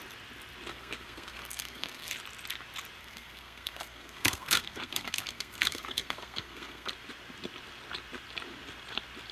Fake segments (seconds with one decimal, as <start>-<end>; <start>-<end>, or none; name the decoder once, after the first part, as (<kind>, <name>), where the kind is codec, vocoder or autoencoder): 0.7-2.1 (codec, SNAC); 3.0-6.9